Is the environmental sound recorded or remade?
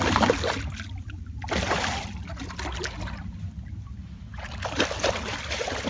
recorded